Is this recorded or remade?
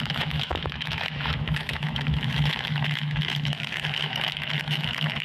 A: remade